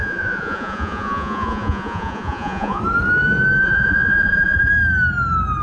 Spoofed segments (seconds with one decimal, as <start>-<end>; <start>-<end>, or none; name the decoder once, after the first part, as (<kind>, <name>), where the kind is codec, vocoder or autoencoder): 0.0-2.8 (vocoder, Vocos); 3.6-4.7